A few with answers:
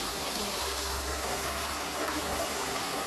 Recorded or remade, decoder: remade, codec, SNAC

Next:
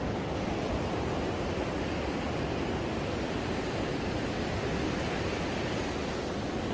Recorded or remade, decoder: recorded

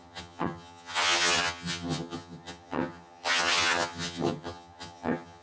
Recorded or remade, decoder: remade, vocoder, HiFi-GAN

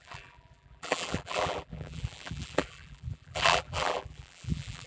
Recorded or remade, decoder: remade, vocoder, BigVGAN v2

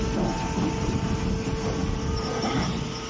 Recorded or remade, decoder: recorded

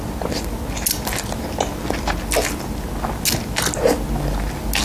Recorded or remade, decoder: recorded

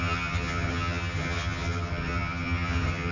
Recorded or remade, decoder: remade, vocoder, HiFi-GAN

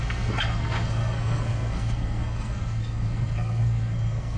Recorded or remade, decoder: remade, codec, SNAC